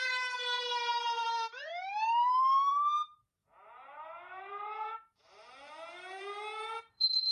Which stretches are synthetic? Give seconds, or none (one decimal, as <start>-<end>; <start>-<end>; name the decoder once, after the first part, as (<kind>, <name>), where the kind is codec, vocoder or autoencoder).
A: 0.0-7.3 (vocoder, BigVGAN v2)